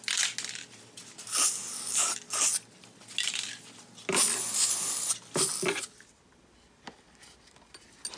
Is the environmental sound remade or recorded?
recorded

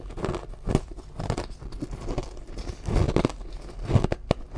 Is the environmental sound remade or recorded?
recorded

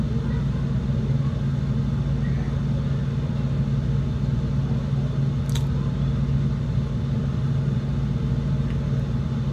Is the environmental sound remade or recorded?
recorded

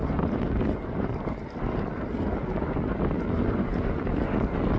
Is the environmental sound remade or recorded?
recorded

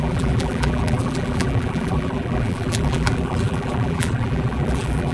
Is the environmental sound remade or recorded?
remade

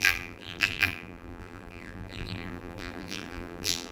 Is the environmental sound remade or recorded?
remade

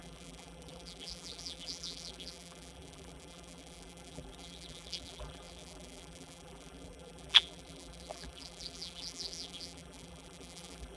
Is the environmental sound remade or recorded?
remade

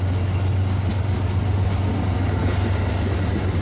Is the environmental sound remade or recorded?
recorded